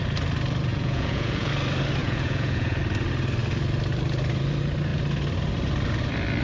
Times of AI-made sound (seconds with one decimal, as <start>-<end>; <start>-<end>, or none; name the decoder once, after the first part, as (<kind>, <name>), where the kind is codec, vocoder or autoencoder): 0.7-1.5 (vocoder, Vocos); 2.0-2.8